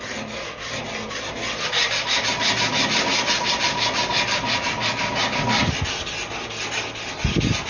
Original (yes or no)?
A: yes